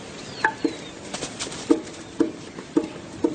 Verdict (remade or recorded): remade